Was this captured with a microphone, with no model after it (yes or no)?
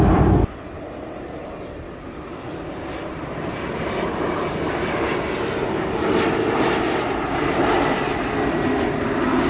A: yes